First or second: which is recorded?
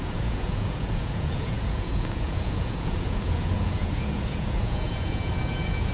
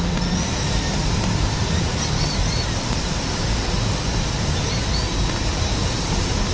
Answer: second